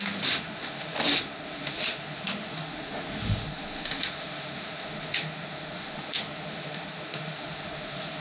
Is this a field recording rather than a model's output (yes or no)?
no